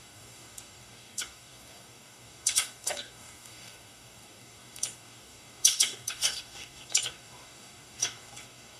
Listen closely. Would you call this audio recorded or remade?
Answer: remade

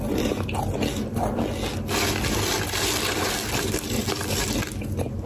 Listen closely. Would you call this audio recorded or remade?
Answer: recorded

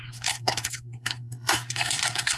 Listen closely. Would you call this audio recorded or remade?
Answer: remade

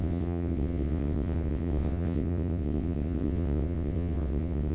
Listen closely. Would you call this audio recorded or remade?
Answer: remade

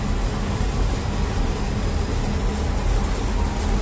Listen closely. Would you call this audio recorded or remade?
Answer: recorded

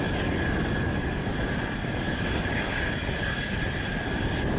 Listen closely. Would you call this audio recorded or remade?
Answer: recorded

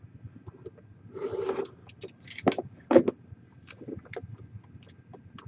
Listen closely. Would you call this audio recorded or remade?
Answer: recorded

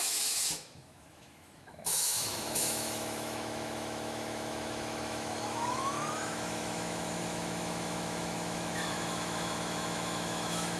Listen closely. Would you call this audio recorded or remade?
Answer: remade